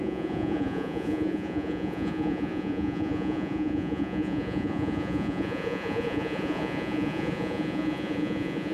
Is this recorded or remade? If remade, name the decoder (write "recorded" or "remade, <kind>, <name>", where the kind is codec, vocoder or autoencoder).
remade, vocoder, Vocos